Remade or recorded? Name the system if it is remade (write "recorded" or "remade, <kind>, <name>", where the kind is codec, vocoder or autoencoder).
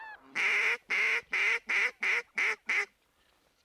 remade, vocoder, BigVGAN v2